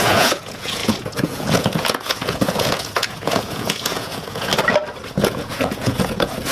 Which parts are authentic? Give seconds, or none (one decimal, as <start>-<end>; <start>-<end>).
4.5-5.1